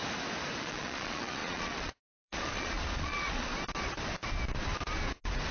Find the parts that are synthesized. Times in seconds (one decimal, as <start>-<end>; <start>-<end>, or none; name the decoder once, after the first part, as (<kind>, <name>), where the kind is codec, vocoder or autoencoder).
0.6-3.5 (vocoder, Vocos)